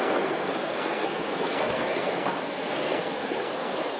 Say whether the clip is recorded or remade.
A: remade